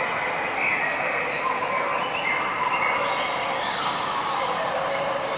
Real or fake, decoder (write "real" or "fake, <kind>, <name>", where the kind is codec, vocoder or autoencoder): real